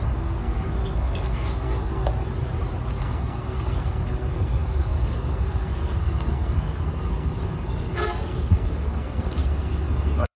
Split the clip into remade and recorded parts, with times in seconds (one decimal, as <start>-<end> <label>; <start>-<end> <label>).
0.0-2.1 remade; 2.1-3.0 recorded; 3.0-10.4 remade